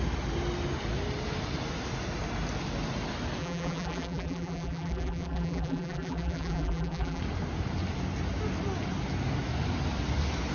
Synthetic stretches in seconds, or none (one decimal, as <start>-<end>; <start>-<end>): 3.4-7.2